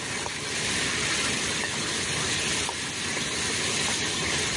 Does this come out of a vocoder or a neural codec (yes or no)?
no